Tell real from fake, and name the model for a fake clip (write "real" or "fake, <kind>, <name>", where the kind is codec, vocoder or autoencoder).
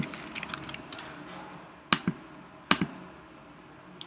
real